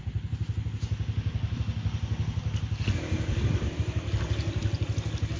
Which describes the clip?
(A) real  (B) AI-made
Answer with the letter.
A